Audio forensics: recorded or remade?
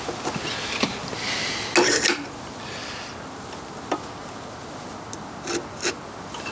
recorded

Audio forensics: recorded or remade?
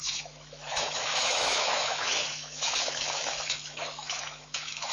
remade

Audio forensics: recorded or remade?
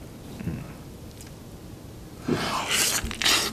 recorded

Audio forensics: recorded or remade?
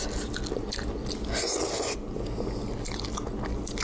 recorded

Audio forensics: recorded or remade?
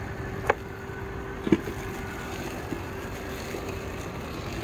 recorded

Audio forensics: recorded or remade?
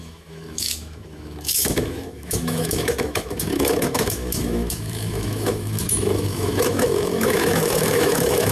remade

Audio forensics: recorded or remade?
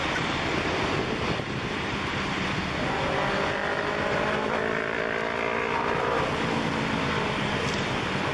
recorded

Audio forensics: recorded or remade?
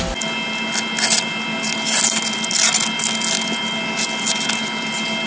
recorded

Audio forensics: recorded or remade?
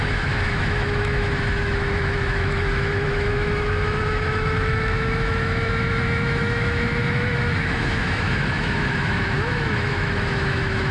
remade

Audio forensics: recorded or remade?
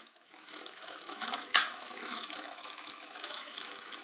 remade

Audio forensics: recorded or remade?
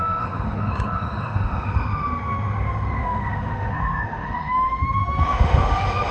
remade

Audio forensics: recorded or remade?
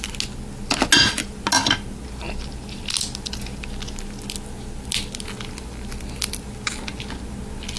recorded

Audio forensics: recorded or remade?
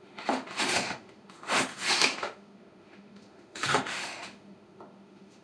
remade